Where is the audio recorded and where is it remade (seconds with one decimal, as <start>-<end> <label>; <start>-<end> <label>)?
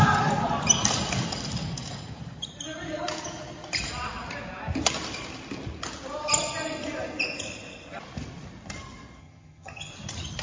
0.0-9.2 recorded; 9.2-9.9 remade; 9.9-10.4 recorded